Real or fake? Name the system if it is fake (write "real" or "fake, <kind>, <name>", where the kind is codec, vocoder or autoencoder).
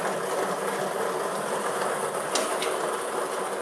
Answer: real